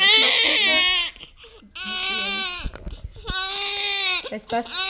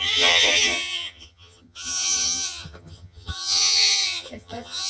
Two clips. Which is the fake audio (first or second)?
second